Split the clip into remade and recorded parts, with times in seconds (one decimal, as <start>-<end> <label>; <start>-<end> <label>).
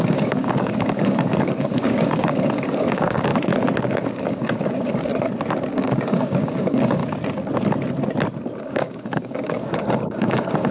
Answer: 0.0-3.3 remade; 3.3-3.8 recorded; 3.8-5.1 remade; 5.1-5.7 recorded; 5.7-7.0 remade; 7.0-8.6 recorded; 8.6-10.7 remade